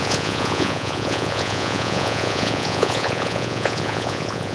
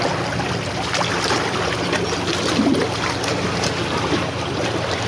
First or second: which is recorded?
second